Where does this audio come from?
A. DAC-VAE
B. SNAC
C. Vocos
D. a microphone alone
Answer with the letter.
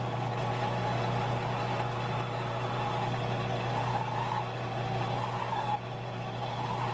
D